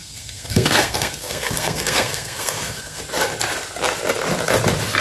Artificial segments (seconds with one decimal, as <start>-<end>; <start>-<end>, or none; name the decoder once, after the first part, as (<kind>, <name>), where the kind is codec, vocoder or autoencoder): 0.0-3.0 (codec, SNAC)